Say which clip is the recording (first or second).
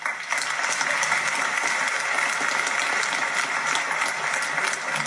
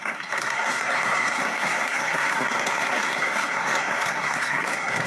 first